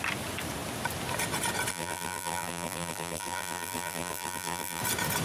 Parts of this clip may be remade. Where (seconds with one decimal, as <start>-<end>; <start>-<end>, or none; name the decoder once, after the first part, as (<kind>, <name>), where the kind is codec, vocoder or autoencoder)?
1.7-4.8 (vocoder, BigVGAN v2)